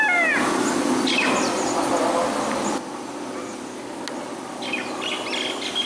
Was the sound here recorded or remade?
recorded